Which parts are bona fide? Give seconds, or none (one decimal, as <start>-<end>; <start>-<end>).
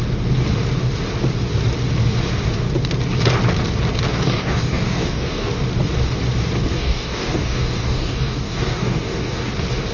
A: 0.0-4.1; 5.5-6.7; 9.5-9.9